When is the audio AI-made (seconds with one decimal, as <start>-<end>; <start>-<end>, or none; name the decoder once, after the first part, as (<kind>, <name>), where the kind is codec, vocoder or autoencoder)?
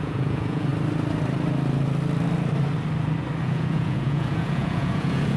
0.0-0.7 (vocoder, Vocos); 3.4-5.4